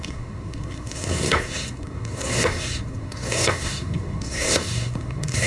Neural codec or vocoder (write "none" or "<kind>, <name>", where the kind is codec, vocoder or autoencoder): codec, SNAC